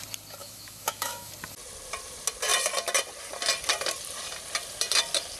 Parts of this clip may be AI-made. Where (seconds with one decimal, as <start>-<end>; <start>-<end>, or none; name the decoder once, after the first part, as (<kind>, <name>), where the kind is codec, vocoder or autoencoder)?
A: 0.4-1.3 (autoencoder, DAC-VAE)